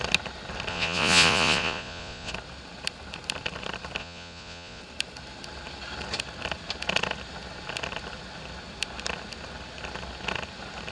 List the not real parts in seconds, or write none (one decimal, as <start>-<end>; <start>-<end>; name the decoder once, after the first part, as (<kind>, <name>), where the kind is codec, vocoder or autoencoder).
0.7-2.3 (vocoder, Vocos); 4.0-4.8